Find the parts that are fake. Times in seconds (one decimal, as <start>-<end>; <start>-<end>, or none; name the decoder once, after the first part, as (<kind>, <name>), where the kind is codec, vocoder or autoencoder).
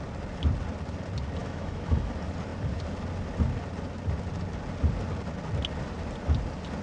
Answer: 1.4-2.1 (autoencoder, DAC-VAE)